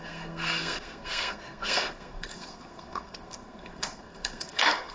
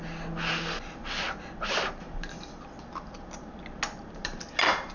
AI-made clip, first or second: first